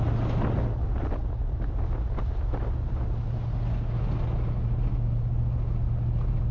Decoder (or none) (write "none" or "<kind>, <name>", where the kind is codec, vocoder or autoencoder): none